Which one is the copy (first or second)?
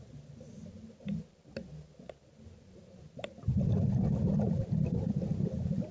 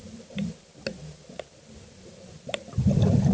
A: second